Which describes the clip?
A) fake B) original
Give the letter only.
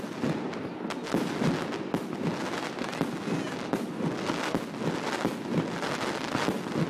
B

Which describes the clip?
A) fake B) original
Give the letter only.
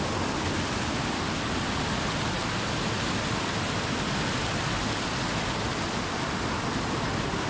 B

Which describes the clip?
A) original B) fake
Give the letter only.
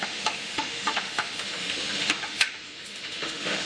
B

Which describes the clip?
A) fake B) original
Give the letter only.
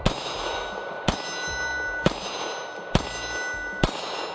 B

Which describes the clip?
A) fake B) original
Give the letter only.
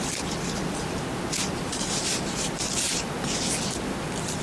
B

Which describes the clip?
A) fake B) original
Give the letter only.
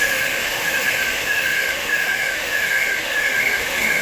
A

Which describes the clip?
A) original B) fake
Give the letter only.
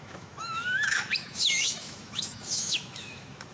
B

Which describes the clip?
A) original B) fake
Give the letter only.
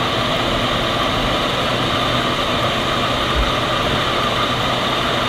A